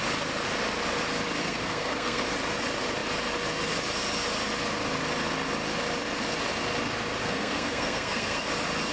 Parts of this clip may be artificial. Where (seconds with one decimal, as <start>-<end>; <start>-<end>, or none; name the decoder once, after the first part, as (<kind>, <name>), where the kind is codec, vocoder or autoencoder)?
1.4-2.2 (codec, SNAC); 7.2-8.5